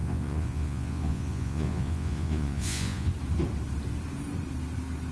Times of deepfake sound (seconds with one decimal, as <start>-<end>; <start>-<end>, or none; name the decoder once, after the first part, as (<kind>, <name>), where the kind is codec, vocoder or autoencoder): 0.0-3.1 (vocoder, Vocos)